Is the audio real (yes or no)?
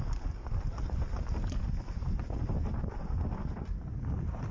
yes